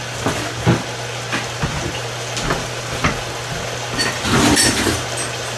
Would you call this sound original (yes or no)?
yes